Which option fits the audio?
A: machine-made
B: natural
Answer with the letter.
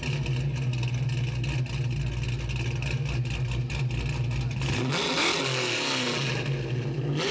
B